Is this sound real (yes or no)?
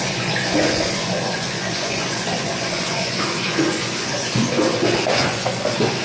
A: no